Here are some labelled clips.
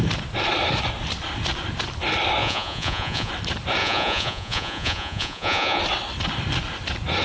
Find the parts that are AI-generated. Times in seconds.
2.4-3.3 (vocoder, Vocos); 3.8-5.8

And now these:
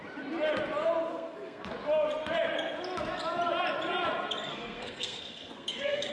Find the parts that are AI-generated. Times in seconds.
1.1-1.7 (codec, SNAC); 4.5-6.1

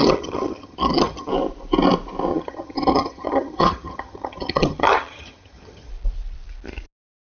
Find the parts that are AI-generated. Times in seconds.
0.0-1.3 (vocoder, HiFi-GAN); 2.3-5.9

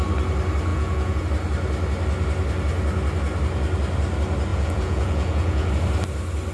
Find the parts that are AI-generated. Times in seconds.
0.7-1.2 (vocoder, Vocos); 4.5-5.7

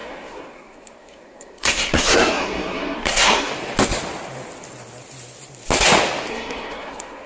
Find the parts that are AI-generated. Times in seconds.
0.0-3.5 (codec, SNAC); 6.3-7.3